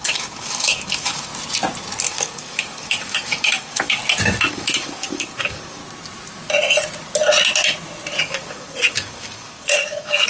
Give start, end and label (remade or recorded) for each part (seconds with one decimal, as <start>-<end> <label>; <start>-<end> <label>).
0.0-1.3 remade; 1.3-2.0 recorded; 2.0-4.0 remade; 4.0-4.5 recorded; 4.5-5.8 remade; 5.8-8.2 recorded; 8.2-10.3 remade